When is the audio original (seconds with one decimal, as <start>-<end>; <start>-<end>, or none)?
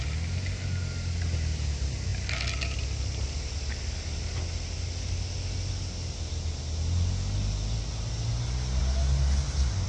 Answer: 0.0-9.9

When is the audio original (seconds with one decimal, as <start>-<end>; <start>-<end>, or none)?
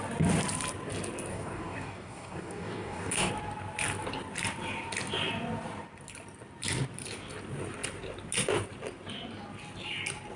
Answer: 0.0-1.3; 3.3-10.4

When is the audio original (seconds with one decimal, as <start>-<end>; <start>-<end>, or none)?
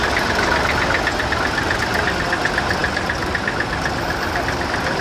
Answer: 0.0-5.0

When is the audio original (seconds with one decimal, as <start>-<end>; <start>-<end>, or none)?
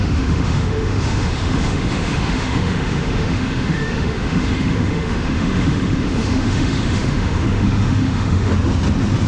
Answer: 8.5-9.3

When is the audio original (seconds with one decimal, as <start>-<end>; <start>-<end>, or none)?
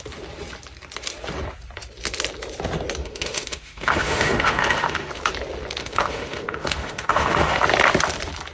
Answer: 0.0-3.0; 5.1-5.8; 7.6-8.5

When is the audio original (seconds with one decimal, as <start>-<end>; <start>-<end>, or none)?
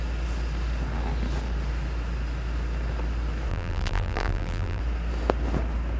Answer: 0.0-3.5; 4.8-6.0